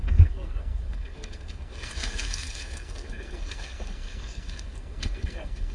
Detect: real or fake fake